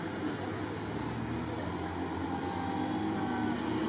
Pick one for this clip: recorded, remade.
recorded